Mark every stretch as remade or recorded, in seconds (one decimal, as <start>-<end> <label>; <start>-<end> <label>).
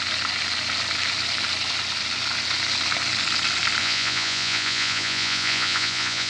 0.0-3.8 recorded; 3.8-6.3 remade